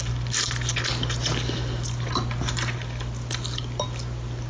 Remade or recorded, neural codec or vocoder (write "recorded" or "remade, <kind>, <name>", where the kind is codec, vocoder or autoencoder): recorded